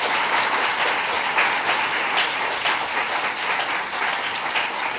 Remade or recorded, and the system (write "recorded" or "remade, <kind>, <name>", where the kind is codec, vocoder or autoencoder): recorded